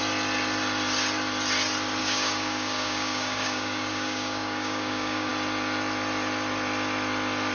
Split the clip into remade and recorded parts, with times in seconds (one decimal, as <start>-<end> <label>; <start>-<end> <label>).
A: 0.0-2.0 recorded; 2.0-5.3 remade; 5.3-7.5 recorded